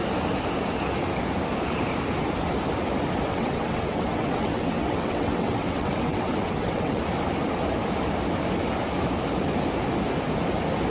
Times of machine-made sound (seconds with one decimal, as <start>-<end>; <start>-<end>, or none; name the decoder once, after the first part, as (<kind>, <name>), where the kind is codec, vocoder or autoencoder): 3.3-7.0 (vocoder, WaveNeXt)